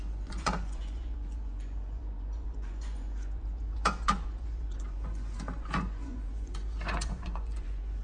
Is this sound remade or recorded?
remade